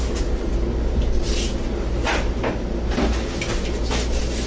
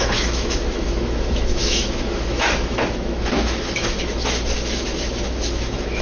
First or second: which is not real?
second